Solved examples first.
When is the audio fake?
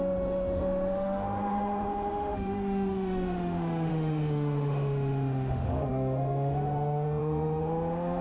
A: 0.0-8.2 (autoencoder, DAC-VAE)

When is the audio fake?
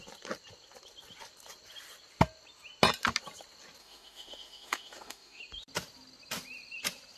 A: 3.8-5.4 (autoencoder, DAC-VAE)